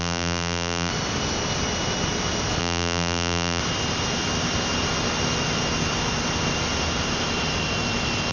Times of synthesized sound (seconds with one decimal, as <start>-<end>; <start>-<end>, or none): 0.0-0.9; 2.6-3.6